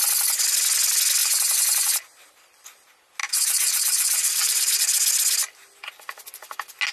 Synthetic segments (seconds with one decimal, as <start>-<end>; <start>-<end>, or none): 1.2-2.0; 3.2-4.8

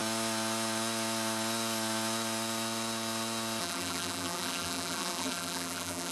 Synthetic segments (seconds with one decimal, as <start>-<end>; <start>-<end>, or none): 3.6-6.1

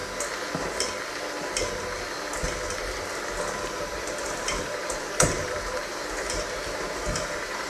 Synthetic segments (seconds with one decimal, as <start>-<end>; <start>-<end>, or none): 3.8-7.7

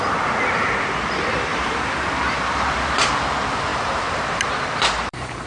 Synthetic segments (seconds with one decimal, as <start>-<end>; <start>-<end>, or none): 1.5-3.1; 3.7-5.5